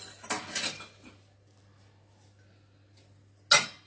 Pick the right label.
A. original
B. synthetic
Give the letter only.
A